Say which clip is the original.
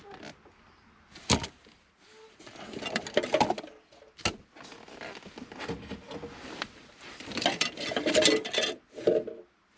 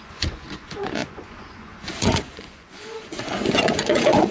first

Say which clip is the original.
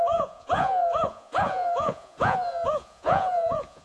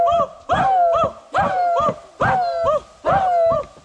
second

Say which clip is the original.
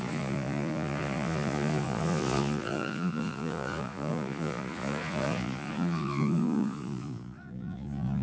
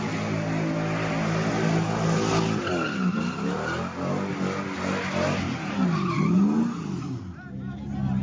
second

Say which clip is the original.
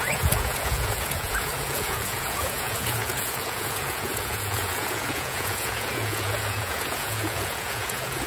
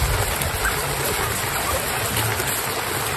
second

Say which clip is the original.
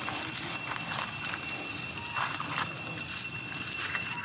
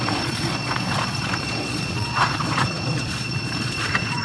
first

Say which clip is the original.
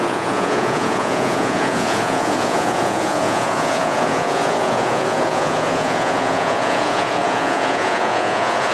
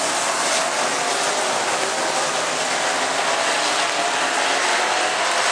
second